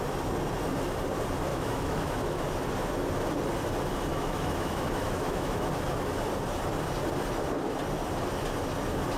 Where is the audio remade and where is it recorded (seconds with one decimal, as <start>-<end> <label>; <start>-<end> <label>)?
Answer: 0.0-1.5 recorded; 1.5-2.4 remade; 2.4-4.1 recorded; 4.1-5.7 remade; 5.7-9.2 recorded